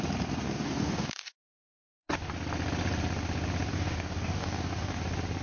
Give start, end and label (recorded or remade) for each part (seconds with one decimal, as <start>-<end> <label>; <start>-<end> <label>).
0.0-0.4 recorded; 0.4-2.3 remade; 2.3-3.7 recorded; 3.7-5.0 remade; 5.0-5.4 recorded